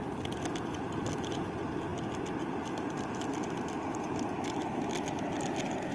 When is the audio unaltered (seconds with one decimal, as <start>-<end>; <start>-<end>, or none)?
0.0-5.9